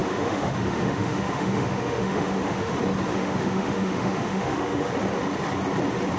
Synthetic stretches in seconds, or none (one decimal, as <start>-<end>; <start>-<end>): 0.0-2.7; 3.1-4.9